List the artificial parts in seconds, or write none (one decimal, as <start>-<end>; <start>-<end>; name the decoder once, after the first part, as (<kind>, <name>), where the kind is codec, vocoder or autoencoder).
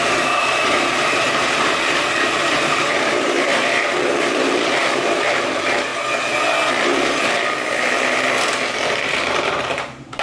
0.0-5.9 (vocoder, BigVGAN v2); 8.9-10.2